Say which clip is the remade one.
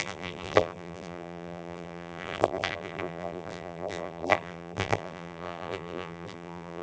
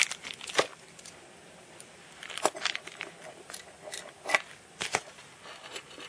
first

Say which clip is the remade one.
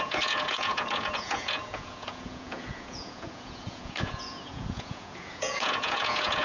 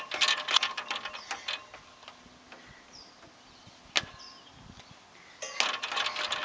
first